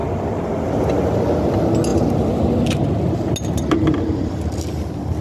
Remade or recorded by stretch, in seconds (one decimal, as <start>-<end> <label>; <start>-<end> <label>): 0.0-5.2 recorded